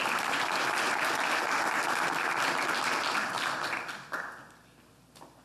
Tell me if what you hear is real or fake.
real